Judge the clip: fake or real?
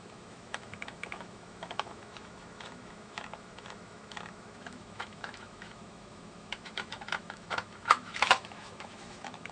fake